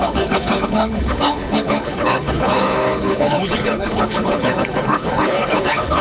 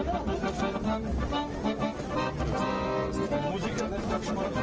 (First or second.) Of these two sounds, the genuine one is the second